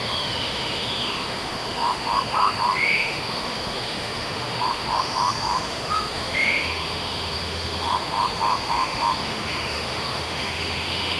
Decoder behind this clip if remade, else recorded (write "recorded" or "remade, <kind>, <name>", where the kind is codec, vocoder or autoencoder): remade, autoencoder, DAC-VAE